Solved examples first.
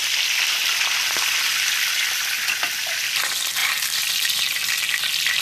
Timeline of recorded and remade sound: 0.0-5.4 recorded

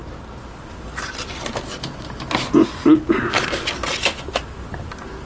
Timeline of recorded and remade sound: 0.0-5.3 recorded

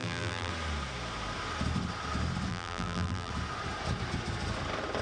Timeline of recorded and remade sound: 0.0-0.5 remade; 0.5-2.5 recorded; 2.5-3.3 remade; 3.3-5.0 recorded

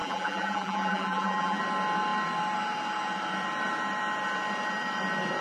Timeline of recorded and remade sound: 0.0-1.6 remade; 1.6-5.4 recorded

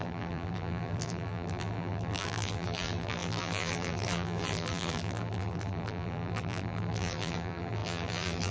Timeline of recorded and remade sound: 0.0-8.5 remade

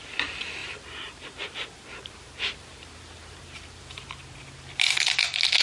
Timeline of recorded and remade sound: 0.0-0.6 recorded; 0.6-4.0 remade; 4.0-5.6 recorded

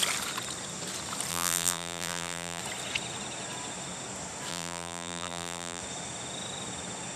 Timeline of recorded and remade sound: 0.0-1.3 recorded; 1.3-2.6 remade; 2.6-4.5 recorded; 4.5-5.8 remade; 5.8-7.2 recorded